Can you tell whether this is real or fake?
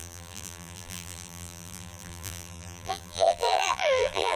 fake